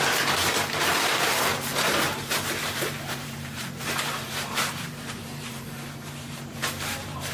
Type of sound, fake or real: fake